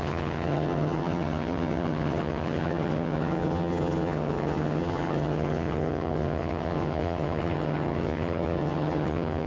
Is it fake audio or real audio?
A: fake